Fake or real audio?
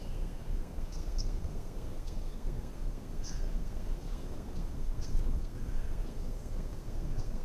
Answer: fake